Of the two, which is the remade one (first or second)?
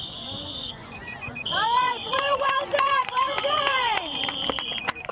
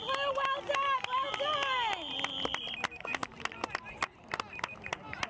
first